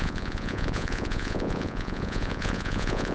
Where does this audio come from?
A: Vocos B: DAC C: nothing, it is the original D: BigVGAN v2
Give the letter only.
A